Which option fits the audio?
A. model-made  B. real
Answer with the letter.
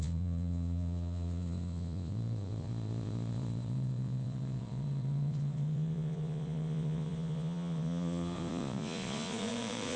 A